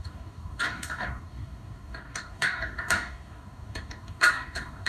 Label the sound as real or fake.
fake